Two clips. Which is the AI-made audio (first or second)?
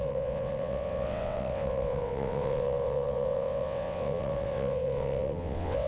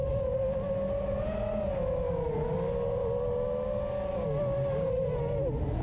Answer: first